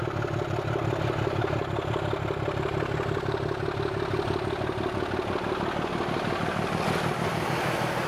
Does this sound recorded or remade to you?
recorded